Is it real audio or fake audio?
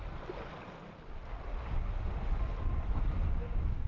real